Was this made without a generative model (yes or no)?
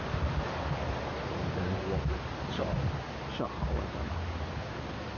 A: yes